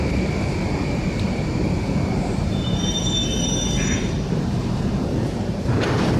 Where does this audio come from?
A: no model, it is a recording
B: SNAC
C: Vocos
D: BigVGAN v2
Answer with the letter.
D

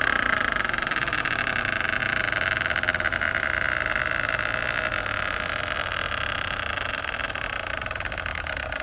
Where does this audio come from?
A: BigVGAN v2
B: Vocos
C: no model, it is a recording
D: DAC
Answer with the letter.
C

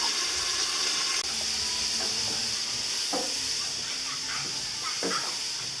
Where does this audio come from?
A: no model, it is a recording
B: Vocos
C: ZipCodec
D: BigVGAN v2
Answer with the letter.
A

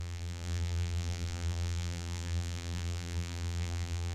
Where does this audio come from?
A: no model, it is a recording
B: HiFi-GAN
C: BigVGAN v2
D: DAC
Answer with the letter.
C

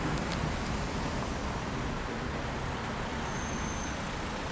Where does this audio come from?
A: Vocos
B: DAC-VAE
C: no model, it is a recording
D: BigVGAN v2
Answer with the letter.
C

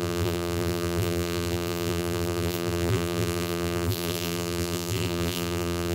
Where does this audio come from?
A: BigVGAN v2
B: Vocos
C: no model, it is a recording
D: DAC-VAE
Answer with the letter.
A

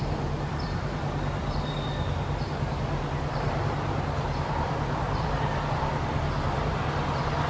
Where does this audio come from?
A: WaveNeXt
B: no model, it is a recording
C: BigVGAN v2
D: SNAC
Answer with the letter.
C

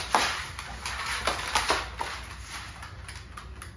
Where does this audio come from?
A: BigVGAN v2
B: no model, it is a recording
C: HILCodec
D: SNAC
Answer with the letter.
B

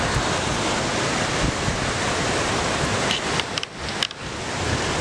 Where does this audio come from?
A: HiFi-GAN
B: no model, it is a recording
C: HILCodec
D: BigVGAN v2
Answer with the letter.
B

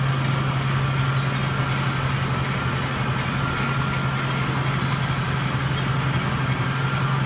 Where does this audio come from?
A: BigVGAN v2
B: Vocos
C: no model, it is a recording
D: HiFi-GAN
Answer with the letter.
C